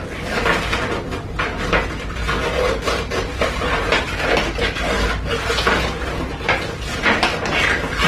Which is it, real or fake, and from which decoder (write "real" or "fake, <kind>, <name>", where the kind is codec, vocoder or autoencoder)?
real